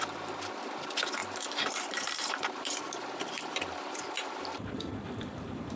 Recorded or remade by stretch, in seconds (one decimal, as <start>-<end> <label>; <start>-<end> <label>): 0.0-1.2 recorded; 1.2-4.7 remade; 4.7-5.8 recorded